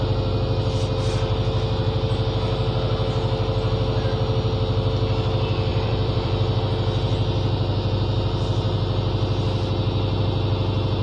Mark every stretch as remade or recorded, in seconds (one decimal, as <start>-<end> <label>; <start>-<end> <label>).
0.0-5.7 recorded; 5.7-6.6 remade; 6.6-11.0 recorded